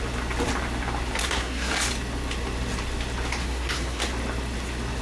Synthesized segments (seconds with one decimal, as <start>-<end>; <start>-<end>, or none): 1.2-1.7; 3.4-4.0